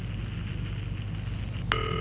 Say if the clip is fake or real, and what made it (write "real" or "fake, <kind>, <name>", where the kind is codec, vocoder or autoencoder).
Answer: real